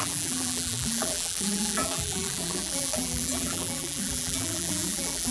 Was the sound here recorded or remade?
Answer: remade